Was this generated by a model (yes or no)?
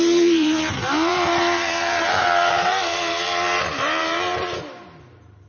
yes